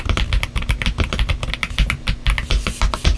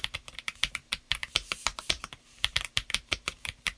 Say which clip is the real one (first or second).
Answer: first